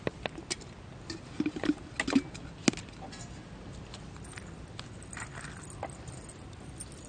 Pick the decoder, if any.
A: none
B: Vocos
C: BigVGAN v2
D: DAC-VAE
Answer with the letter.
A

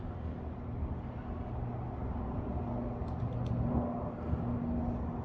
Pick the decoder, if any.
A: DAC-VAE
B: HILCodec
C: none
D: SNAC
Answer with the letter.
C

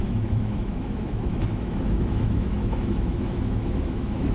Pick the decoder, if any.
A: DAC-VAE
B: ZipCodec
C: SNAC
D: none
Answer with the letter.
A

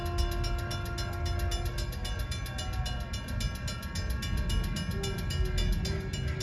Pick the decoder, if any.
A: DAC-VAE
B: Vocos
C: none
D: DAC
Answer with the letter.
C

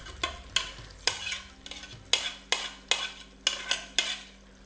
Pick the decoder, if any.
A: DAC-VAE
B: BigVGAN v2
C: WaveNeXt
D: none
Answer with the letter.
D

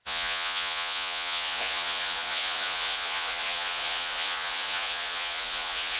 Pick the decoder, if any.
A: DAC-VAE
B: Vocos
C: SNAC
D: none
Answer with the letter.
B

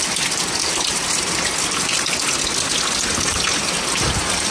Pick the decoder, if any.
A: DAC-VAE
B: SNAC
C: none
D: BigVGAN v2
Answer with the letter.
C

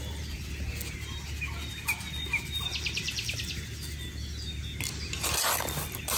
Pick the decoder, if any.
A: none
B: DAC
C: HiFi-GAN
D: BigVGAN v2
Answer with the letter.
A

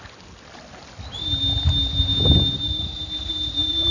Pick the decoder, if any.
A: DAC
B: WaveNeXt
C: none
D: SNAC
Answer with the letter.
C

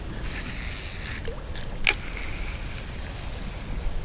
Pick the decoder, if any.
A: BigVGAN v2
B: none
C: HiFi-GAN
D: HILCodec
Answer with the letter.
B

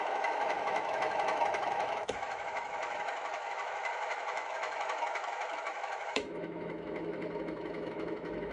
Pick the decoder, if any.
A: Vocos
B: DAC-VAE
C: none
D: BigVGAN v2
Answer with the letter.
B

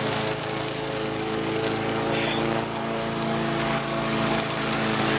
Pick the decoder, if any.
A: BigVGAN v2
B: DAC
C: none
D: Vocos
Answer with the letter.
B